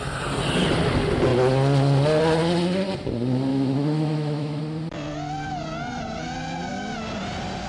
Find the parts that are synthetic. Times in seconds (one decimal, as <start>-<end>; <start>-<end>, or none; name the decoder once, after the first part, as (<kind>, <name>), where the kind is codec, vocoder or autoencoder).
3.5-4.6 (autoencoder, DAC-VAE)